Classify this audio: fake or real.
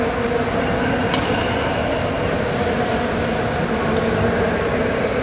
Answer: real